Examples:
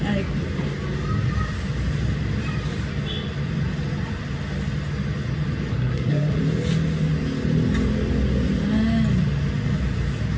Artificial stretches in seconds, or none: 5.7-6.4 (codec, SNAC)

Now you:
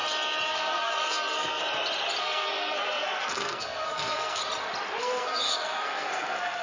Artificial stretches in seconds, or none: 0.5-1.6 (codec, SNAC); 2.2-4.4; 5.0-6.6